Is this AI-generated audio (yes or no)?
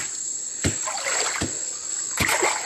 no